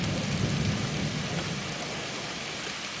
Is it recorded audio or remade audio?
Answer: recorded